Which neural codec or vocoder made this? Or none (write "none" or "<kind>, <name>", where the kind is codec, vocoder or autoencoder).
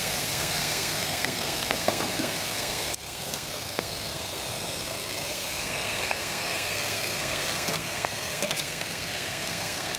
codec, SNAC